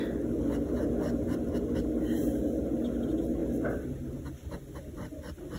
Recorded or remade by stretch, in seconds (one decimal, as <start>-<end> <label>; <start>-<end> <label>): 0.0-5.6 recorded